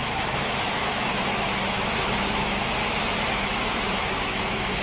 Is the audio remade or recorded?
remade